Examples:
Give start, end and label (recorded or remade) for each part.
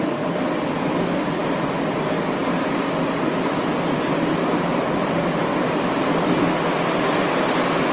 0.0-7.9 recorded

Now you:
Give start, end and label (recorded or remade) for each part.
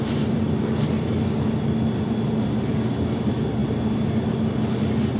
0.0-5.2 recorded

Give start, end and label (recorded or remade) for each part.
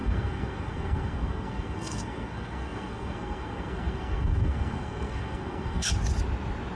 0.0-5.9 remade; 5.9-6.8 recorded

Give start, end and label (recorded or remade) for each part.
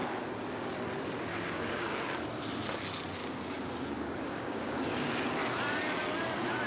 0.0-1.3 recorded; 1.3-2.2 remade; 2.2-3.2 recorded; 3.2-5.1 remade; 5.1-6.7 recorded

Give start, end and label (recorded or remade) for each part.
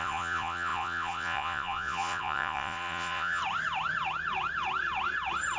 0.0-3.4 remade; 3.4-5.6 recorded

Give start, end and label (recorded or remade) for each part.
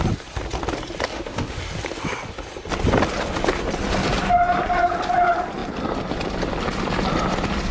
0.0-1.1 recorded; 1.1-1.6 remade; 1.6-7.7 recorded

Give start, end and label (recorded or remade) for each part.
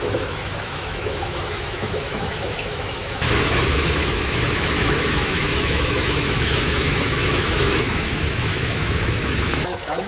0.0-10.1 remade